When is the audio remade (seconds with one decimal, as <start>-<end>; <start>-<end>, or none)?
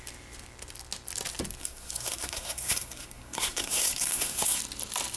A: 1.6-4.6